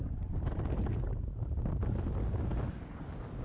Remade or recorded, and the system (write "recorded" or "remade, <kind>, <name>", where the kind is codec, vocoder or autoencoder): recorded